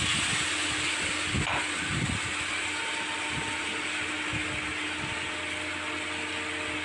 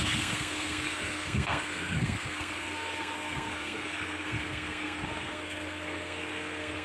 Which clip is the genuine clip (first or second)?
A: first